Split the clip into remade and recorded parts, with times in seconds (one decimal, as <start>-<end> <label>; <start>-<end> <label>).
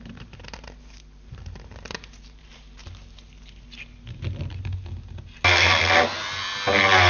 0.0-2.8 remade; 2.8-7.1 recorded